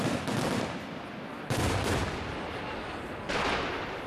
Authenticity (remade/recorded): recorded